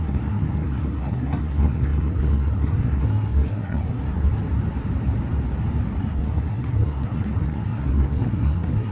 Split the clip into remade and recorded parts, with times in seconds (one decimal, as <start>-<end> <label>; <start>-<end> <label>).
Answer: 0.0-4.3 remade; 4.3-6.0 recorded; 6.0-8.9 remade